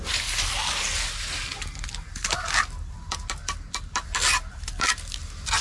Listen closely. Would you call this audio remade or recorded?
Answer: recorded